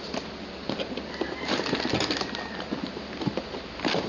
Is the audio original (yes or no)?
yes